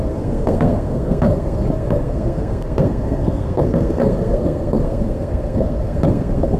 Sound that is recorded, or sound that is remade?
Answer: remade